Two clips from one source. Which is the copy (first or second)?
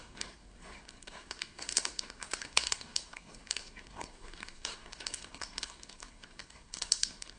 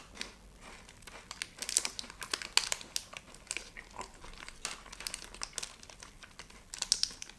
first